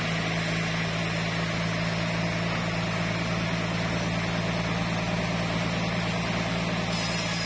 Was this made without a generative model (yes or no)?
yes